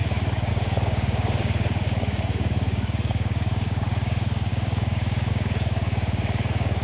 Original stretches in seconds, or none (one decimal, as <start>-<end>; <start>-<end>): none